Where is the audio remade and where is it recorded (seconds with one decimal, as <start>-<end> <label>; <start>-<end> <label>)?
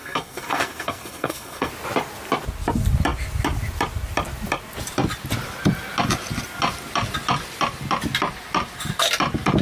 0.0-1.7 remade; 1.7-9.6 recorded